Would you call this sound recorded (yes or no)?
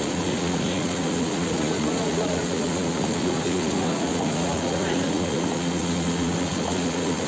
no